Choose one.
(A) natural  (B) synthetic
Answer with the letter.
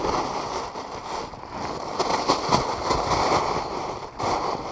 A